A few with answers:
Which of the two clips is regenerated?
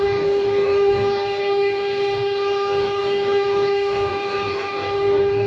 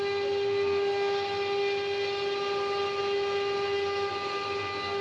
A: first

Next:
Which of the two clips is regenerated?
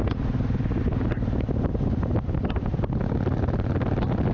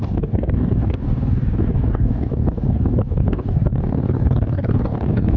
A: second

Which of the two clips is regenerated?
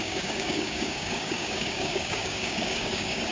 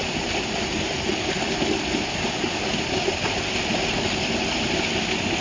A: first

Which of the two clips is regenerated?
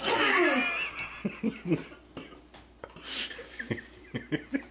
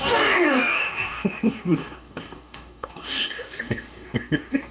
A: second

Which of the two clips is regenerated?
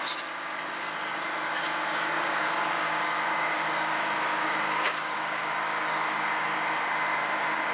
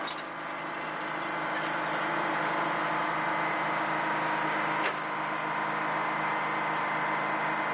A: first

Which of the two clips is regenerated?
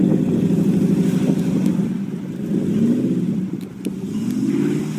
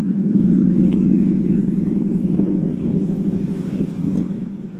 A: second